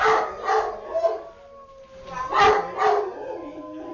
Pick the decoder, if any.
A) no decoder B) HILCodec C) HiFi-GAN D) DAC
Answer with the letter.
A